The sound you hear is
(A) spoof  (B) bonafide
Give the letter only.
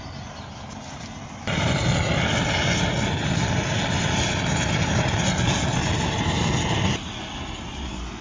B